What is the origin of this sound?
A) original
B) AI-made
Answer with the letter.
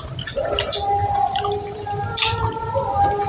A